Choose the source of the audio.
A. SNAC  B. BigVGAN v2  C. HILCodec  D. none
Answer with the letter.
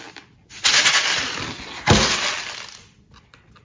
D